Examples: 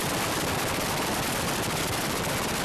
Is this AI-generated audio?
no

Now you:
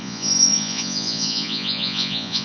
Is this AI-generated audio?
yes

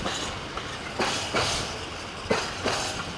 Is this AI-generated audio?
no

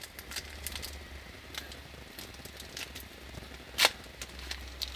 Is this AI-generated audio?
no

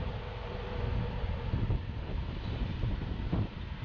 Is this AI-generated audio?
yes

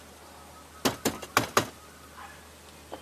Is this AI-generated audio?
no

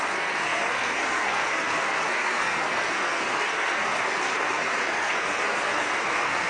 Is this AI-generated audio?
yes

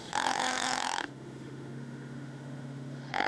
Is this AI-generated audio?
yes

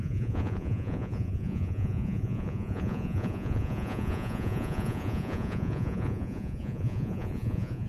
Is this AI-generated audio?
yes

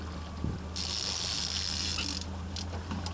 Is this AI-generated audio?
no